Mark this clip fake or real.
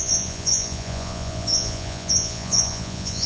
fake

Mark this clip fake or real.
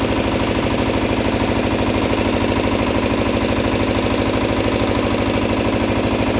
real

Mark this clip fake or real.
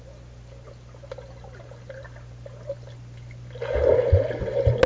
real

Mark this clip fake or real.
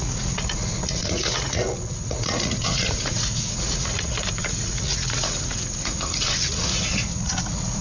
fake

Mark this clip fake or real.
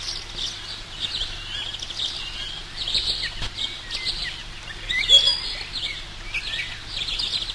real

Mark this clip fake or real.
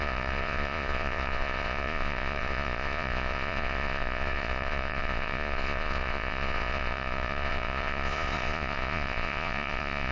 fake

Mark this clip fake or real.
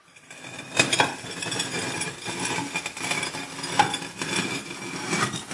real